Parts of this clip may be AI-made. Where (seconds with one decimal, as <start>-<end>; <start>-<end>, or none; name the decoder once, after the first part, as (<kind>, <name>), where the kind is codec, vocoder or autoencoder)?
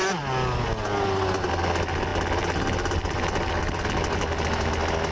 none